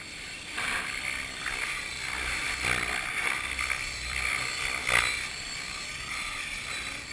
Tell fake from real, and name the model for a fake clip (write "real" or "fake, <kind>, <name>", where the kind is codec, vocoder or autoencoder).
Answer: fake, vocoder, BigVGAN v2